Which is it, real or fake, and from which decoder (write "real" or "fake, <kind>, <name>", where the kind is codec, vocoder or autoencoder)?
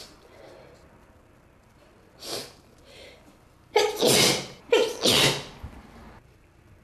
real